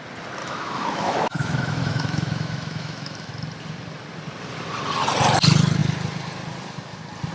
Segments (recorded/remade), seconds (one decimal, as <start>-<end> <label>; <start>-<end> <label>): 0.0-0.4 recorded; 0.4-3.3 remade; 3.3-7.3 recorded